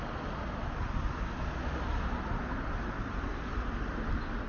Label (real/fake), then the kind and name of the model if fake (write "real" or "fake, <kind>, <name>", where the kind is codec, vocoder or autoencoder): real